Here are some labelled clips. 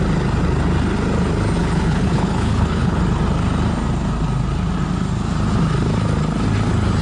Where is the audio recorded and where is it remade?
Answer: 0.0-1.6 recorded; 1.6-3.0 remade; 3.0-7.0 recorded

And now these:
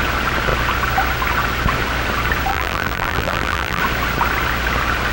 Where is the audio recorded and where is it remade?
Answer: 0.0-2.5 recorded; 2.5-3.8 remade; 3.8-5.1 recorded

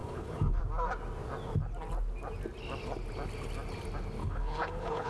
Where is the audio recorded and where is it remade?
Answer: 0.0-0.6 remade; 0.6-4.2 recorded; 4.2-5.1 remade